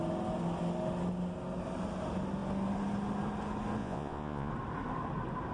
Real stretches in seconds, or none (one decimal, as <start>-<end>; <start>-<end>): 0.0-3.8; 4.5-5.5